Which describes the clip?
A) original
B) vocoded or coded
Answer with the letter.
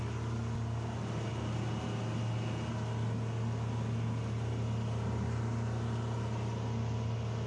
A